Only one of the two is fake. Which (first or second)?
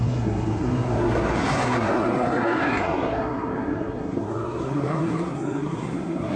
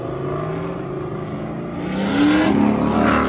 first